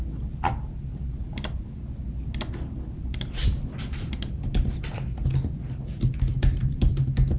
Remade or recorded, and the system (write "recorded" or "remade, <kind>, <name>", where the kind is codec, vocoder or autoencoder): recorded